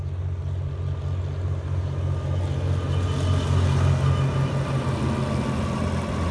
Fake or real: real